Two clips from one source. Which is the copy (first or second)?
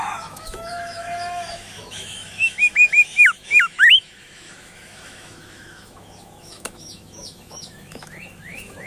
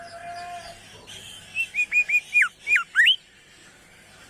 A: first